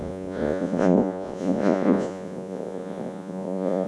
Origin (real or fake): fake